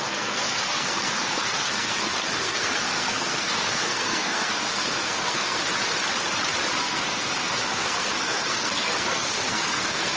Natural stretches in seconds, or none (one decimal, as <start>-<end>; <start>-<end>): 5.7-6.8